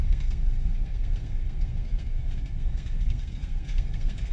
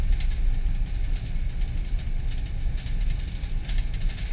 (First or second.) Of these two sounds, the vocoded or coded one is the first